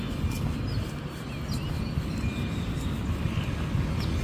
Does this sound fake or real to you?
real